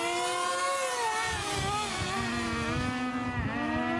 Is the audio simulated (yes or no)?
no